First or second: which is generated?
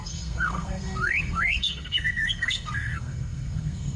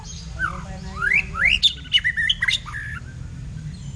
first